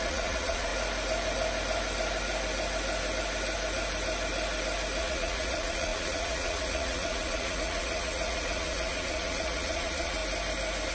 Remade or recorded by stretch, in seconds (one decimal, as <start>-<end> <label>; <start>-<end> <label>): 0.0-0.7 remade; 0.7-5.0 recorded; 5.0-10.2 remade; 10.2-10.9 recorded